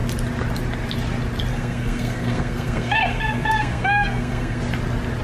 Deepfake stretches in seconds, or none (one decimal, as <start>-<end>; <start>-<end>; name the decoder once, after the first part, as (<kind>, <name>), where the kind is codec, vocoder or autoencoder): 1.5-4.6 (codec, SNAC)